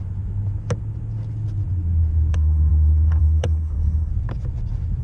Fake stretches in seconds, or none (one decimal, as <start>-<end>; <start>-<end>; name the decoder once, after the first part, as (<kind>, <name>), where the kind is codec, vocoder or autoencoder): 2.3-4.1 (codec, SNAC)